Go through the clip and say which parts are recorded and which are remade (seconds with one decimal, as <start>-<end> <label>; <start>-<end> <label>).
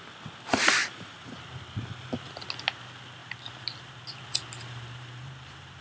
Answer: 0.0-0.8 recorded; 0.8-1.4 remade; 1.4-3.2 recorded; 3.2-4.0 remade; 4.0-4.6 recorded; 4.6-5.8 remade